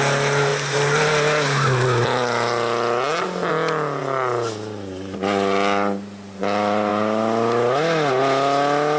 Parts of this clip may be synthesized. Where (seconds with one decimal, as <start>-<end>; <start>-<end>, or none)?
none